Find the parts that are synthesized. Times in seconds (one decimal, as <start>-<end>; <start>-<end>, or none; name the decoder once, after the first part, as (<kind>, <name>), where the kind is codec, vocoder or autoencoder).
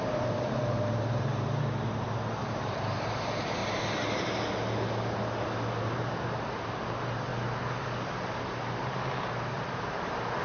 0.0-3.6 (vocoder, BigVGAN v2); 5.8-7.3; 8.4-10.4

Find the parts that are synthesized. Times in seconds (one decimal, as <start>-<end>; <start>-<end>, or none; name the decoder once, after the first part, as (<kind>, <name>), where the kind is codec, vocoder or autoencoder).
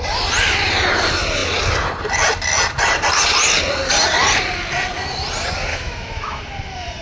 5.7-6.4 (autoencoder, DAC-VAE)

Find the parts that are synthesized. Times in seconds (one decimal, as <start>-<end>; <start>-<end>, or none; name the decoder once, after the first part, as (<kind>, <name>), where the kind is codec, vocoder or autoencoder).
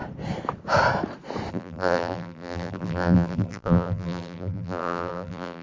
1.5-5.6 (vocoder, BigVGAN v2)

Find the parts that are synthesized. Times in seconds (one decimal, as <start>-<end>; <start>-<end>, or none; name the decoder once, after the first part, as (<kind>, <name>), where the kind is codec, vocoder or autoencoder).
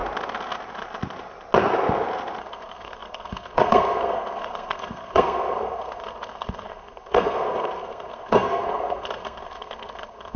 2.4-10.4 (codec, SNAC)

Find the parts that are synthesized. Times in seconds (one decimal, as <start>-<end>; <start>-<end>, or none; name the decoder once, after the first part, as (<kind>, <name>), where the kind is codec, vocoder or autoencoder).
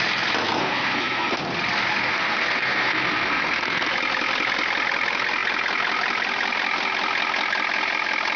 0.6-1.4 (codec, SNAC); 2.0-3.9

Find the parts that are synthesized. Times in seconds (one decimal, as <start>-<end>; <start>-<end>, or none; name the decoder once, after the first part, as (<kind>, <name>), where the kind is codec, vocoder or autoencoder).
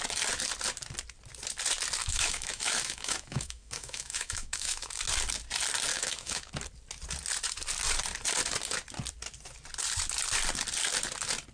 2.0-5.0 (autoencoder, DAC-VAE); 5.9-6.5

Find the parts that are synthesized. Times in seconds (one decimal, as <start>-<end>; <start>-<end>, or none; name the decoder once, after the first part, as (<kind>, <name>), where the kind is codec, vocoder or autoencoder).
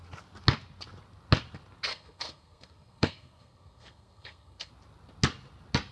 1.9-4.7 (codec, SNAC)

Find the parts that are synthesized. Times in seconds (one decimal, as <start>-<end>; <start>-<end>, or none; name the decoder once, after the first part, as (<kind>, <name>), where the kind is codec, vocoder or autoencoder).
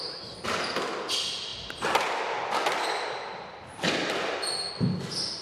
none